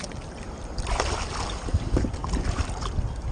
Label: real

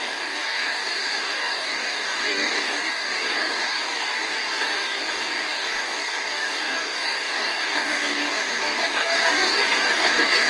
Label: fake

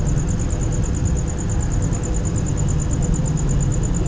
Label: real